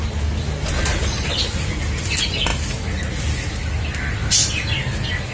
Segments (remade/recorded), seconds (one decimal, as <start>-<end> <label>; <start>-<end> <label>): 0.0-5.3 recorded